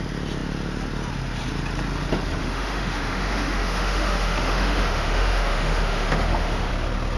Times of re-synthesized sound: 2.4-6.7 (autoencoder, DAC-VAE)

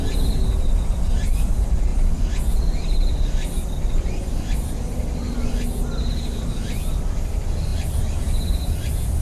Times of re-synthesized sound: none

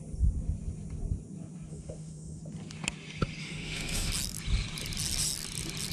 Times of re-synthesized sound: 1.7-2.4 (autoencoder, DAC-VAE); 3.4-4.1

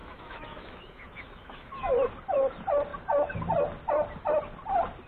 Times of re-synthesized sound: 0.0-1.9 (autoencoder, DAC-VAE)

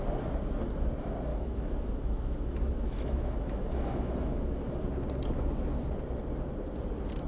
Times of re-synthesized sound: 1.3-4.8 (autoencoder, DAC-VAE)